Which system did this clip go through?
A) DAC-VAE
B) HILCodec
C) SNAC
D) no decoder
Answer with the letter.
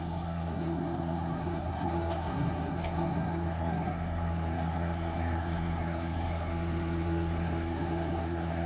C